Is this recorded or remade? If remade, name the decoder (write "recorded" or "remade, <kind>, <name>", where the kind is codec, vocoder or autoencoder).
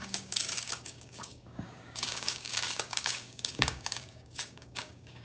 remade, codec, DAC